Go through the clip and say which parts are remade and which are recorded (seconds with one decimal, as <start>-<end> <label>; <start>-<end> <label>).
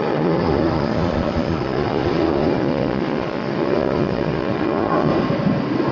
0.0-5.1 remade; 5.1-5.9 recorded